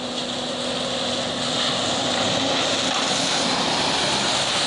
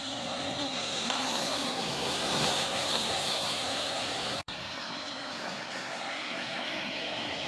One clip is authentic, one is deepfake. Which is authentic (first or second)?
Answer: first